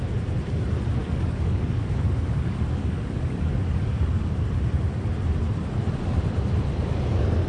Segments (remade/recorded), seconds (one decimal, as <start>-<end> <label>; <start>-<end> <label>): 0.0-1.0 recorded; 1.0-4.3 remade; 4.3-7.5 recorded